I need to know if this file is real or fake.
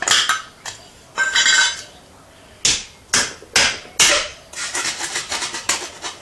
real